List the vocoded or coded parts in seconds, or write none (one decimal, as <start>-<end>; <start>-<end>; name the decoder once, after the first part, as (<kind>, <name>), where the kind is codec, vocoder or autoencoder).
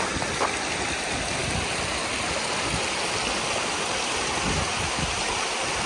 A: none